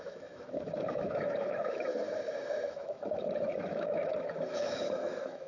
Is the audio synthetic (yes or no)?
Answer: yes